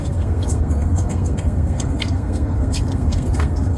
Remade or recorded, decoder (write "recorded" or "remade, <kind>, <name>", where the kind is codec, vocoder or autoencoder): remade, codec, SNAC